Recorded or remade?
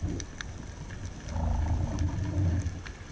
recorded